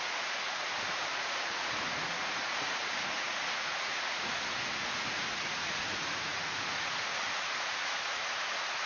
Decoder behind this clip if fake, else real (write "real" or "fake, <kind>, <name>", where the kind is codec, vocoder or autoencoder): fake, vocoder, Vocos